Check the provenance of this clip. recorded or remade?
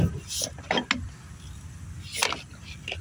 recorded